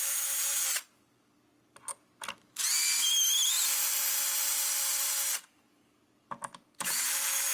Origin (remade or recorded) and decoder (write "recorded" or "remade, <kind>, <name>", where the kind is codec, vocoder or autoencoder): recorded